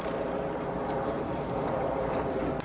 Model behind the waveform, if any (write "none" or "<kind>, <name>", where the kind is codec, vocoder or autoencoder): none